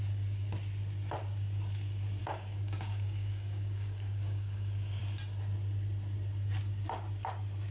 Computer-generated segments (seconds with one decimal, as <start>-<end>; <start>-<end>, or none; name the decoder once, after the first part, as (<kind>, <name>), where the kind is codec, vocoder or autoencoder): 2.2-5.0 (codec, DAC)